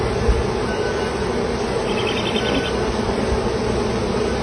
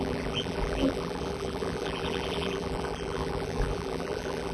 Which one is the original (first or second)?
first